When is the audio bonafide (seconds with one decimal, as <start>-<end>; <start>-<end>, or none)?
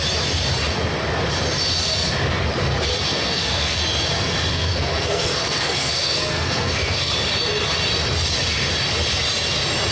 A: 0.0-2.9; 3.8-4.5; 7.1-9.9